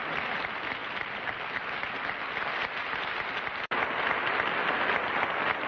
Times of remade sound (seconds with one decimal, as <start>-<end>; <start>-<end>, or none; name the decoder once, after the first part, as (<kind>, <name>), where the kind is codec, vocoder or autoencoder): none